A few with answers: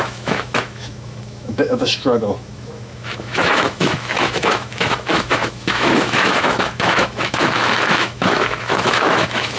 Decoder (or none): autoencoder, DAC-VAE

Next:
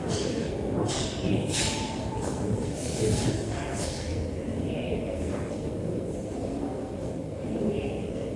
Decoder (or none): codec, SNAC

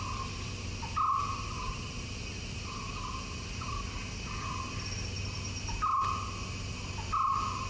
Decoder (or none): none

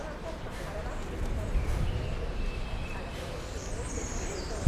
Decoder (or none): vocoder, BigVGAN v2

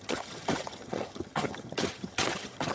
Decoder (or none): vocoder, HiFi-GAN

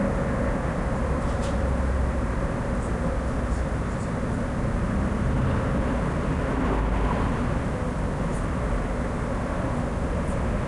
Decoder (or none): none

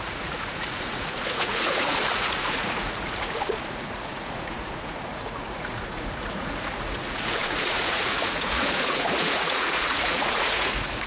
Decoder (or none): vocoder, Vocos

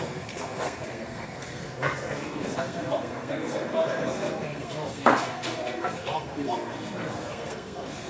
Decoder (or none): codec, SNAC